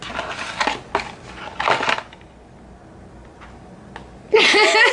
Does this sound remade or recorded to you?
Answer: recorded